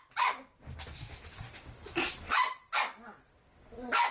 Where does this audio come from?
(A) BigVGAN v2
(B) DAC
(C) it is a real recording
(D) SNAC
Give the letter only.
C